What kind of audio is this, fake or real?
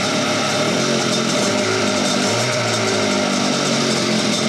fake